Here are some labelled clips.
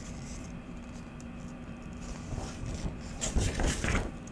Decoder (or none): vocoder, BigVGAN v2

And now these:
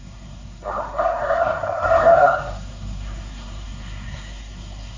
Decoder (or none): codec, SNAC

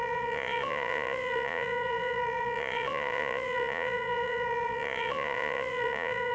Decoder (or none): vocoder, Vocos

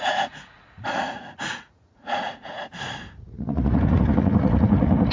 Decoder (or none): vocoder, Vocos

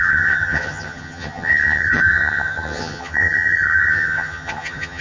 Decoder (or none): vocoder, HiFi-GAN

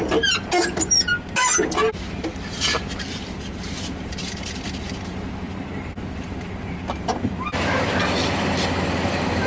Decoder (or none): none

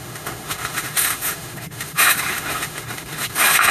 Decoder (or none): autoencoder, DAC-VAE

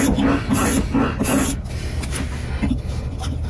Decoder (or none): none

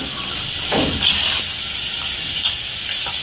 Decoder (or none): none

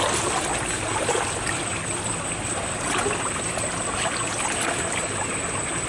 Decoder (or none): none